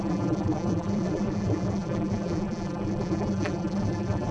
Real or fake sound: fake